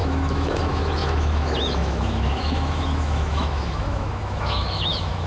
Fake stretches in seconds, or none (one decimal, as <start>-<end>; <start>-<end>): 0.0-5.3